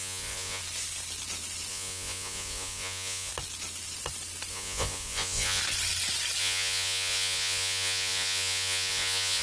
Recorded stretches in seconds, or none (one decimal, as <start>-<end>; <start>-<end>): 0.6-1.7; 3.3-4.5; 5.6-6.4